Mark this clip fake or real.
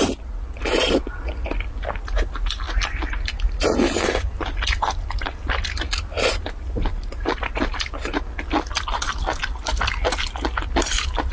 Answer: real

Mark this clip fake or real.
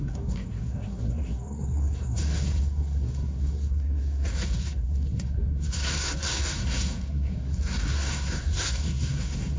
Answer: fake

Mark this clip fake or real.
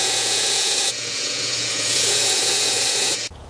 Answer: fake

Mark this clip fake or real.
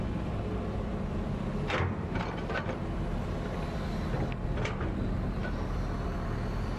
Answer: real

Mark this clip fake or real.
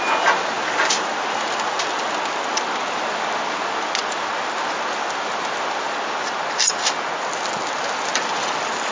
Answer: real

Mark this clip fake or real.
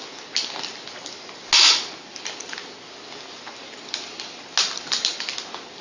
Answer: real